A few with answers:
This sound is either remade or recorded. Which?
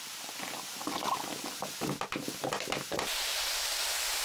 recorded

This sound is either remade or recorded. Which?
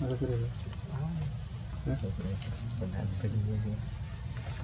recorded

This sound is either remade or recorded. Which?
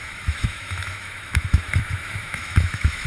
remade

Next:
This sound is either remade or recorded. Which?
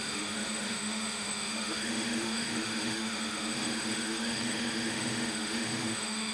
remade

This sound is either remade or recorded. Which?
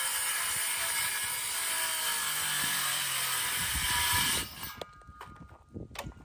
recorded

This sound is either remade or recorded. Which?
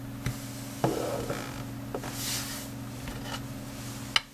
recorded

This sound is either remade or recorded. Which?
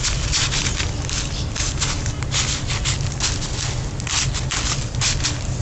recorded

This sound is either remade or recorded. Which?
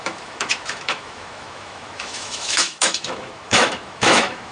remade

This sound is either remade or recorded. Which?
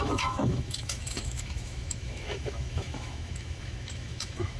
remade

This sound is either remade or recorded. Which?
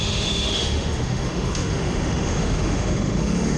remade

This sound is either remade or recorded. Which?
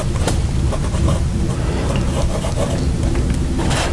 recorded